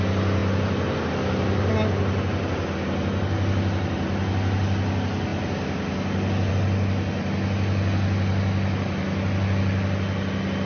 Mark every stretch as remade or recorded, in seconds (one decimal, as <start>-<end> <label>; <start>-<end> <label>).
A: 0.0-10.7 recorded